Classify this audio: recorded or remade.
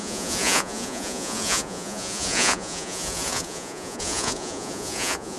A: remade